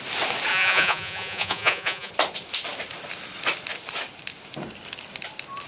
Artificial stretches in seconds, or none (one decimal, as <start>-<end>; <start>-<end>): 0.5-2.1